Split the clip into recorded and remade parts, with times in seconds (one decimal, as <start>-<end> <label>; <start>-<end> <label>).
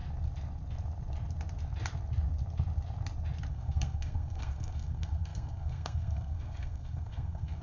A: 0.0-3.5 recorded; 3.5-7.6 remade